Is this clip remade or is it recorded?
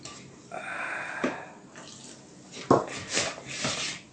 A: recorded